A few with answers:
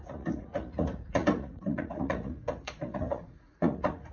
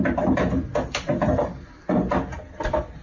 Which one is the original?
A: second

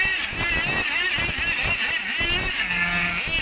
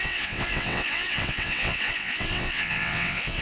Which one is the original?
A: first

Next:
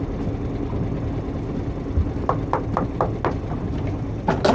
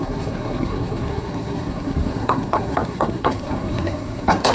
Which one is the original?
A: first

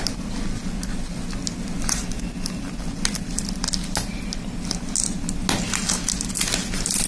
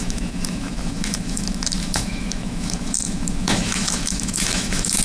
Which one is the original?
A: first